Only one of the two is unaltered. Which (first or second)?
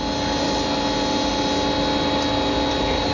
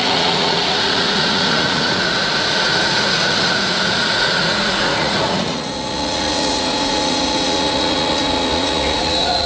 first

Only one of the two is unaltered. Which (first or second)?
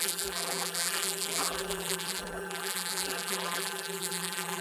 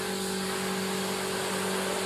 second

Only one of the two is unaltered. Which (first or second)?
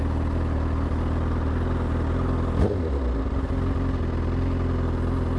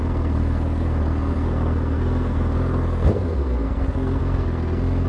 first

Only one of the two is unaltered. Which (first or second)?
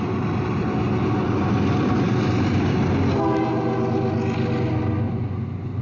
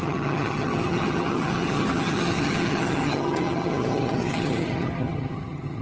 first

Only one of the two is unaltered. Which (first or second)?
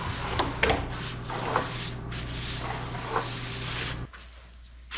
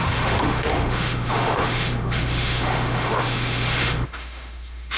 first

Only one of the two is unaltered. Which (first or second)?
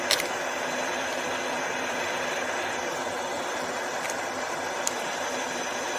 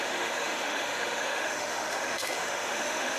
first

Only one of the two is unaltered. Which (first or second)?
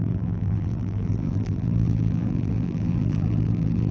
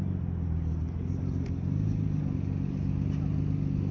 second